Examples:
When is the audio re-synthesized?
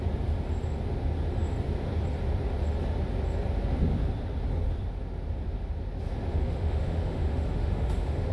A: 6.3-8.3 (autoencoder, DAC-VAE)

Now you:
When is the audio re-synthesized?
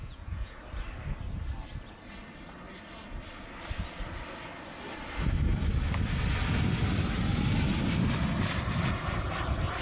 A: 0.0-0.6 (vocoder, Vocos)